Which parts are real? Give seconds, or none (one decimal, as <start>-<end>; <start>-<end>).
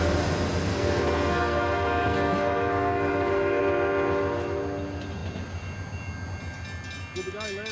0.0-0.7; 3.6-7.7